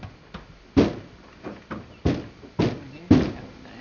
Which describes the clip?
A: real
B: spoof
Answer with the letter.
A